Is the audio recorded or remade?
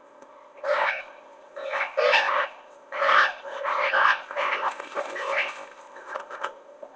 remade